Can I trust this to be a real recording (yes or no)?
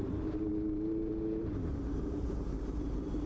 no